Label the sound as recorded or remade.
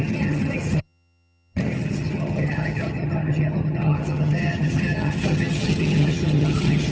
remade